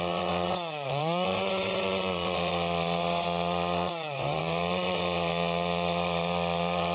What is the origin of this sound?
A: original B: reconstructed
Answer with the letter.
B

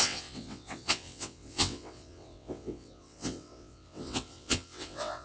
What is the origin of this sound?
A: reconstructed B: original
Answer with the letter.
A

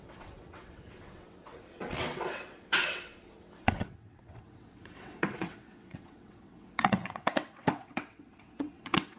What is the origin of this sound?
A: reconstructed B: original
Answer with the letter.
A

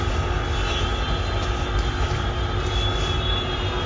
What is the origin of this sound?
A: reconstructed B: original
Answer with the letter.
B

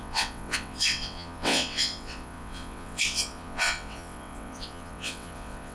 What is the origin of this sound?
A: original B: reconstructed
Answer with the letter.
B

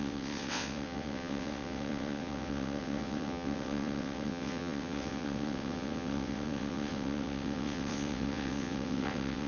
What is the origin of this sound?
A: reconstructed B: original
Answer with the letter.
A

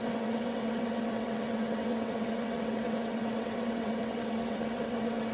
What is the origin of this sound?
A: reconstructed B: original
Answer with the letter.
A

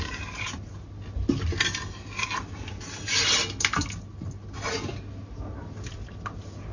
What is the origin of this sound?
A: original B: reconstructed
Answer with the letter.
A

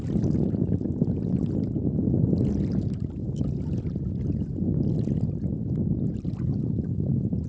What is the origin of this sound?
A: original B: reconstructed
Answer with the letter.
A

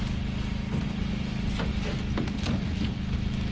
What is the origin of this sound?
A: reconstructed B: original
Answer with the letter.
B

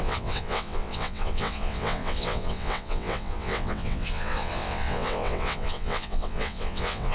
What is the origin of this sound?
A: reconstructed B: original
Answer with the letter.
A